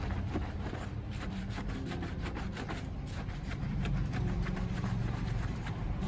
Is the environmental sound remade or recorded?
remade